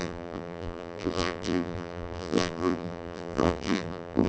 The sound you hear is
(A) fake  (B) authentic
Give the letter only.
A